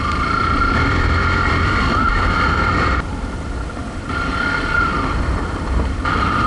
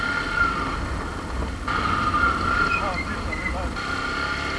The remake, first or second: first